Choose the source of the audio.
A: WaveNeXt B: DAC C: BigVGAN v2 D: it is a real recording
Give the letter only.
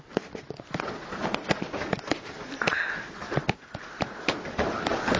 D